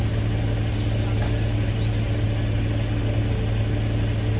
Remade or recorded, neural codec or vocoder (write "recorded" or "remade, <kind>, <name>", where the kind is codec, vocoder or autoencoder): recorded